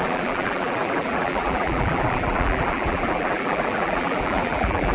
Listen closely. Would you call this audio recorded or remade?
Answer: remade